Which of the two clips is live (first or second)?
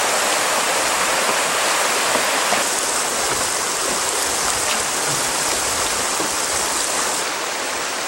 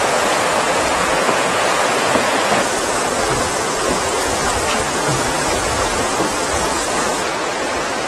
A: first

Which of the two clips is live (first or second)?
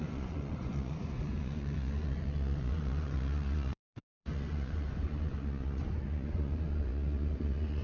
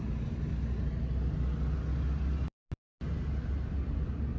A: second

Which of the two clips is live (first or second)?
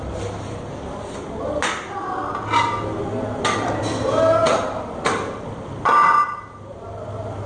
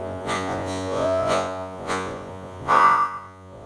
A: first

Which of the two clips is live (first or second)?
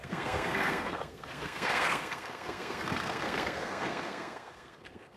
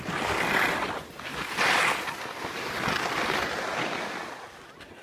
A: second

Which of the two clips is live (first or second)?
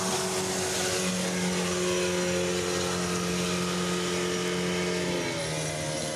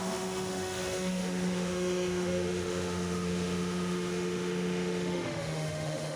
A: first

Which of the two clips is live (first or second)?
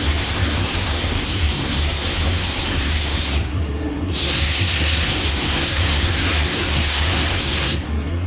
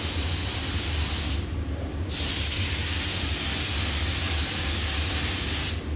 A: second